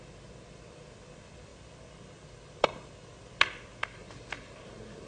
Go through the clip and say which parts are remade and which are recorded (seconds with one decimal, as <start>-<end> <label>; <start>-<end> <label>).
0.0-1.5 recorded; 1.5-3.8 remade; 3.8-5.1 recorded